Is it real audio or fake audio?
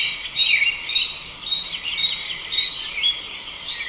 real